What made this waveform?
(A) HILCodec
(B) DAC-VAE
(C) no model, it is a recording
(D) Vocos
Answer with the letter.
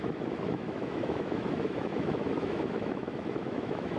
B